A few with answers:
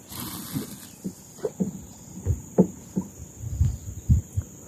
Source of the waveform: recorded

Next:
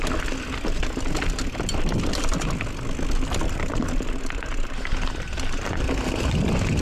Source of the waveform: recorded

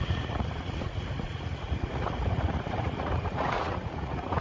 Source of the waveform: remade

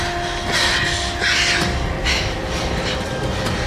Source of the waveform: recorded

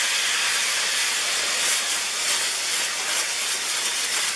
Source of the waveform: recorded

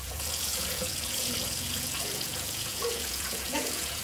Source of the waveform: remade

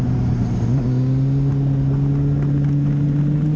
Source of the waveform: recorded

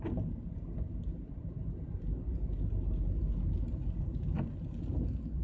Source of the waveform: recorded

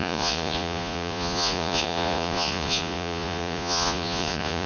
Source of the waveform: remade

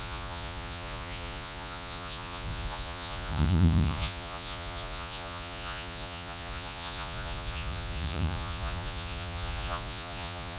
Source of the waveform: remade